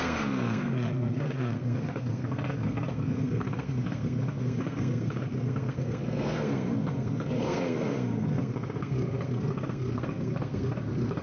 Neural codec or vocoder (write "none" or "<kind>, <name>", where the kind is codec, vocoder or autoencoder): codec, SNAC